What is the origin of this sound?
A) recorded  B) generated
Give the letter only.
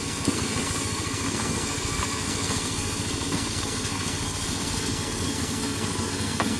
B